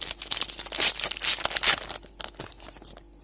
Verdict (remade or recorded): recorded